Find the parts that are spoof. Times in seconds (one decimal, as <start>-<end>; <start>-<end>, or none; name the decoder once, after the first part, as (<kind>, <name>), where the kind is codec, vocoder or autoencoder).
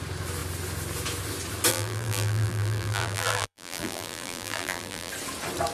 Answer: 1.7-5.1 (vocoder, BigVGAN v2)